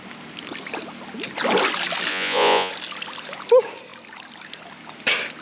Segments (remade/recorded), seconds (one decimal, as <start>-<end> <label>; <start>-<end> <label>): 0.0-2.1 recorded; 2.1-2.7 remade; 2.7-5.4 recorded